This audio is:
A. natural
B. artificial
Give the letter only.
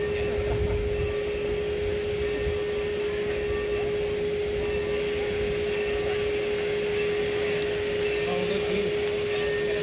A